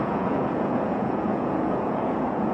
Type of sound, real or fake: fake